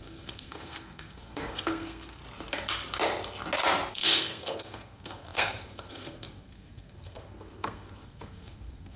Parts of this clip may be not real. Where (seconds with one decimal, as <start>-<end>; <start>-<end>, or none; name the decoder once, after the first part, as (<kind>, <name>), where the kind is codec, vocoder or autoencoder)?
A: 0.0-2.2 (codec, SNAC); 3.9-9.0

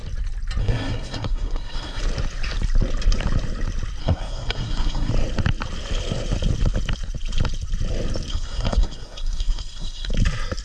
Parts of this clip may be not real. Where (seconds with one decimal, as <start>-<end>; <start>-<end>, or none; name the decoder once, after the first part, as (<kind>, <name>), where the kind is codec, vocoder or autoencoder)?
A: 0.6-2.0 (codec, SNAC); 4.0-5.1; 8.3-10.1

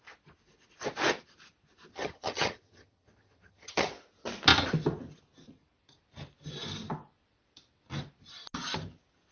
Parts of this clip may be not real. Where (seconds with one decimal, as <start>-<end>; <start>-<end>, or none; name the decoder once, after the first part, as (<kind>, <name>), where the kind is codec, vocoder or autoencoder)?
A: 1.9-3.9 (vocoder, HiFi-GAN)

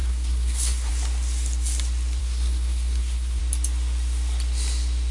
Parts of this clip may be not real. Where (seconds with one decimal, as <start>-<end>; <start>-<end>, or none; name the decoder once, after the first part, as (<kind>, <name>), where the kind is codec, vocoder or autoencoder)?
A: 0.0-0.9 (codec, SNAC); 2.2-3.4